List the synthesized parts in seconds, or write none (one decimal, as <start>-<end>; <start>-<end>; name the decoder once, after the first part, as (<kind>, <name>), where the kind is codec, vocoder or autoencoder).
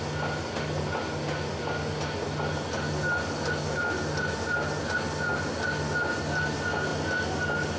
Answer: none